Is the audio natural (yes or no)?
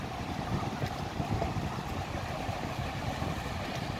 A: no